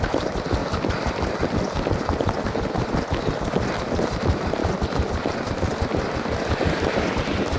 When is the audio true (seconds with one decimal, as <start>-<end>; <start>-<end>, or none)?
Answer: 4.6-5.1